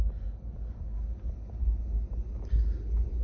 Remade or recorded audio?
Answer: recorded